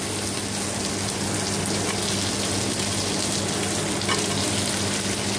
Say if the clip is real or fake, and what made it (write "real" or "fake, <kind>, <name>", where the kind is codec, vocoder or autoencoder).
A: real